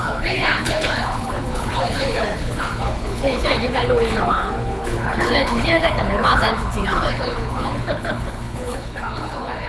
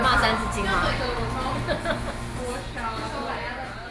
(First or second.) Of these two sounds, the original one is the second